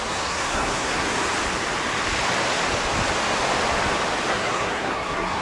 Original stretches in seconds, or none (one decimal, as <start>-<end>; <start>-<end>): 1.1-4.3